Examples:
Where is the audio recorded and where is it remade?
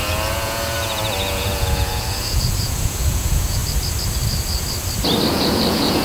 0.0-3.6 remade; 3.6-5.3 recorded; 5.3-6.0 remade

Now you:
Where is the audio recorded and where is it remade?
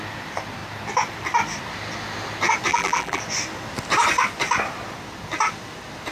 0.0-2.7 recorded; 2.7-3.2 remade; 3.2-6.1 recorded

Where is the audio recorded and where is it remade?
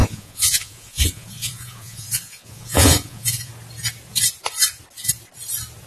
0.0-3.5 remade; 3.5-5.9 recorded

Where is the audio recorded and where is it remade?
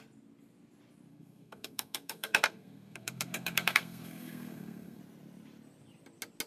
0.0-1.1 recorded; 1.1-5.0 remade; 5.0-6.5 recorded